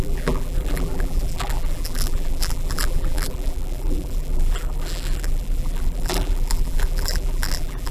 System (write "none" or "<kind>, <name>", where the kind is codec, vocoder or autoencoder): vocoder, BigVGAN v2